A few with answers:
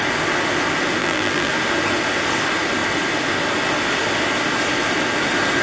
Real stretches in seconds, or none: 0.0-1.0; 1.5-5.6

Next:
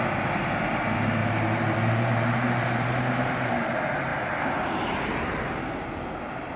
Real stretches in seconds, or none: 0.0-1.2; 3.5-6.6

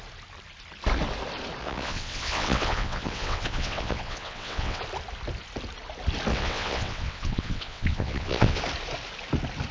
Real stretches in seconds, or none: 0.0-1.6; 4.8-6.3; 8.6-9.7

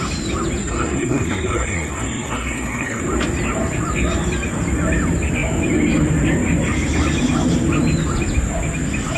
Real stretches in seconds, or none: 0.0-0.6; 3.0-9.2

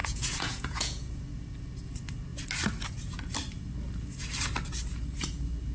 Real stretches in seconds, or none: 1.1-5.7

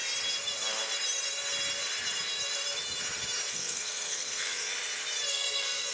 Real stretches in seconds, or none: 0.0-3.5; 4.7-5.3